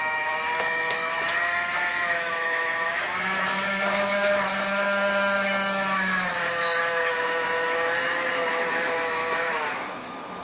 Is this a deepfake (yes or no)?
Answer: yes